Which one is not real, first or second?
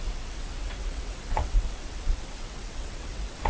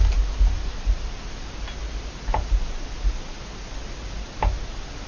first